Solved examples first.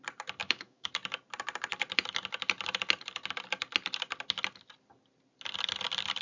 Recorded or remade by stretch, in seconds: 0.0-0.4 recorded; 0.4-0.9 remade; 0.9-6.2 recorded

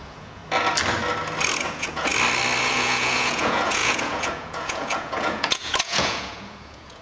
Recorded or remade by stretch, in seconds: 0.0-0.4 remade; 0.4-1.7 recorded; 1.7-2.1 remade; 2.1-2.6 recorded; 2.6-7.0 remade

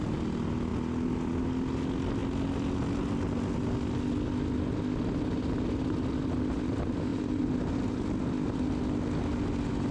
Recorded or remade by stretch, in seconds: 0.0-9.9 recorded

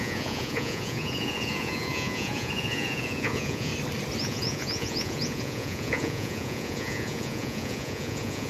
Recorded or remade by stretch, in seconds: 0.0-3.7 remade; 3.7-4.2 recorded; 4.2-8.5 remade

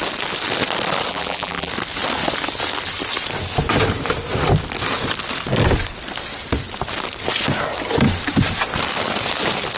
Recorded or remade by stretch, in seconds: 0.0-1.1 recorded; 1.1-1.7 remade; 1.7-9.8 recorded

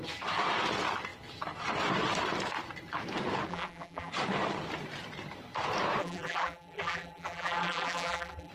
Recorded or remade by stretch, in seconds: 0.0-3.5 recorded; 3.5-4.1 remade; 4.1-6.0 recorded; 6.0-8.5 remade

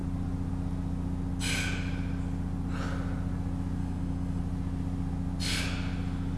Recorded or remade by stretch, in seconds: 0.0-3.8 recorded; 3.8-4.4 remade; 4.4-6.4 recorded